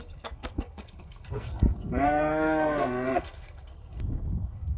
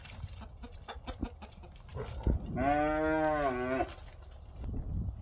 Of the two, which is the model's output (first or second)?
first